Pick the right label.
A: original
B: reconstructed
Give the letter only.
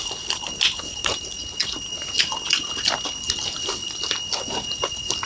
A